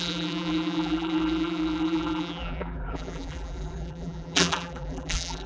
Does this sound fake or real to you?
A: fake